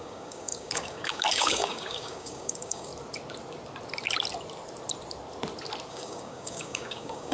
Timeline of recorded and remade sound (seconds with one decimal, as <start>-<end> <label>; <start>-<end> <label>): 0.0-2.9 remade; 2.9-5.9 recorded; 5.9-7.3 remade